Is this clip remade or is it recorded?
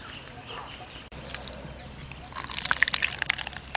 recorded